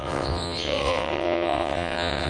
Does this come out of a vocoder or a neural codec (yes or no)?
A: yes